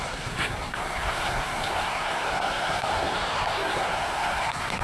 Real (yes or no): no